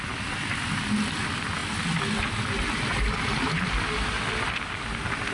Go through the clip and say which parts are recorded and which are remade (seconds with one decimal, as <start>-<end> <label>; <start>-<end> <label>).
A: 0.0-5.3 recorded